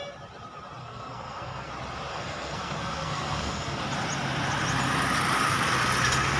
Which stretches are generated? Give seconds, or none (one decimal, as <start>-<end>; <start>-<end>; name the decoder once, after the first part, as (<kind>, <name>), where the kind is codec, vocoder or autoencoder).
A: 0.8-1.7 (codec, SNAC); 2.1-3.8